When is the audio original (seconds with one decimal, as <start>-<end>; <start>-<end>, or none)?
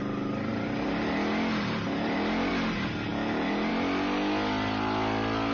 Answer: 0.0-5.5